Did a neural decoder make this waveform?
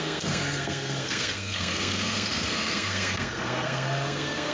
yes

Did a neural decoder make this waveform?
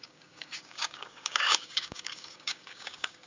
yes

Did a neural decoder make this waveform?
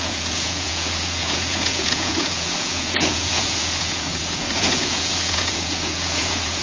yes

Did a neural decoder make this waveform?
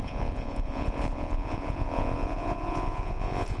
yes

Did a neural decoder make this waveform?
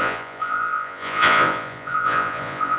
yes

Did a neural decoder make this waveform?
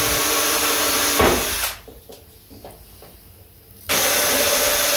yes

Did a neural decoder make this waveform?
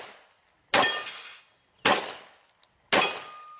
no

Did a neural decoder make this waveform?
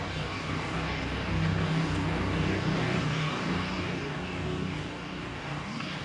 yes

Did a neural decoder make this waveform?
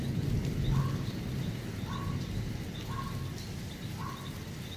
no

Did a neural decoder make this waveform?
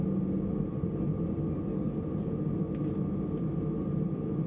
no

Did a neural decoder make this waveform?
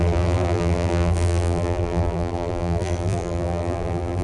yes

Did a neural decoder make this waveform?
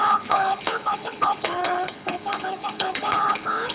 yes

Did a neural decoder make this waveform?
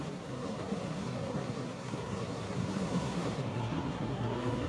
yes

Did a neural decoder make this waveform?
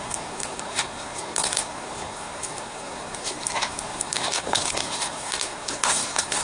yes